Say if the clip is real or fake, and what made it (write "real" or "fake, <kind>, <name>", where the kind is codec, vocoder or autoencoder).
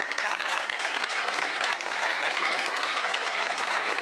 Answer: fake, codec, SNAC